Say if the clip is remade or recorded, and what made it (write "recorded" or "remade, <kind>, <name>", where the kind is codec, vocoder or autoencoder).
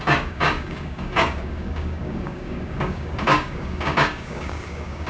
remade, codec, DAC